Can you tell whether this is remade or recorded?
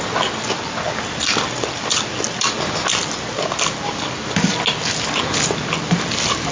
recorded